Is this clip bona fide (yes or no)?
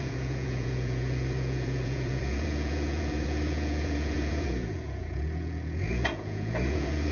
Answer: no